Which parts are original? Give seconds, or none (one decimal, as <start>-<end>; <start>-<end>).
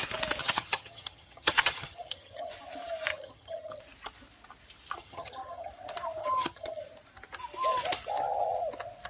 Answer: 0.0-0.4; 2.5-3.1; 3.8-5.0; 5.7-6.2; 6.8-9.1